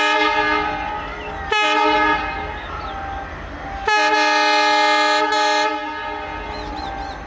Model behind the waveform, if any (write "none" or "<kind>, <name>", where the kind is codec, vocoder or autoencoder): none